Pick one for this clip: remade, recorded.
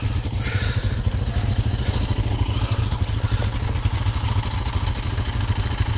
recorded